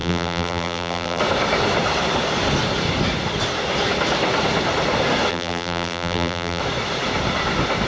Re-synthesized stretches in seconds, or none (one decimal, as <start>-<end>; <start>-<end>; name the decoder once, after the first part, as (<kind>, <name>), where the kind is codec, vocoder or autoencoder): 0.0-1.2 (vocoder, BigVGAN v2); 5.3-6.6